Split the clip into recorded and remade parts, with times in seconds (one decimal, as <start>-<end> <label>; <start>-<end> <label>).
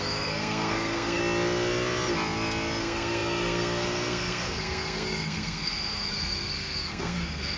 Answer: 0.0-1.2 remade; 1.2-2.8 recorded; 2.8-7.6 remade